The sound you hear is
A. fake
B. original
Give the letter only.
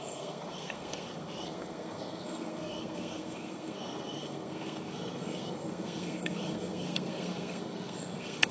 A